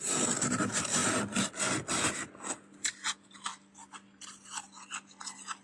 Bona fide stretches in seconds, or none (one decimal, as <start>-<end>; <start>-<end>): 0.0-5.6